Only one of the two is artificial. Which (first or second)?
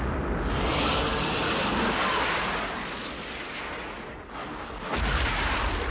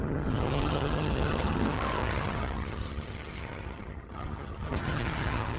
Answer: second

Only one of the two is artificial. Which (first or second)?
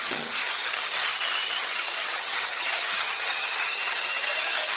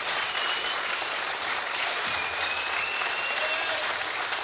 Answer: first